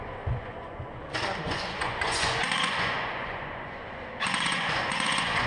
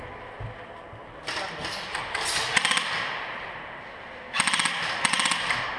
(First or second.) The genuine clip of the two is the second